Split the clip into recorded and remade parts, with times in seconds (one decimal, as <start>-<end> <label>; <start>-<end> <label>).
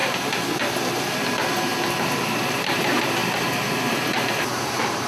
0.0-1.0 recorded; 1.0-3.2 remade; 3.2-3.9 recorded; 3.9-5.1 remade